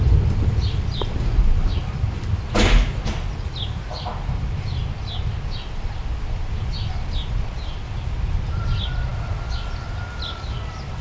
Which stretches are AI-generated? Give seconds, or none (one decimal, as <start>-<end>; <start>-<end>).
none